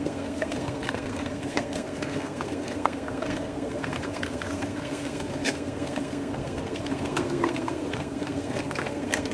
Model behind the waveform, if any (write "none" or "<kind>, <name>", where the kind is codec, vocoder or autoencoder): codec, SNAC